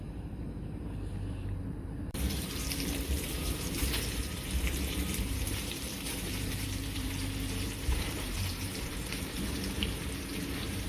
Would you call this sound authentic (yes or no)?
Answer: no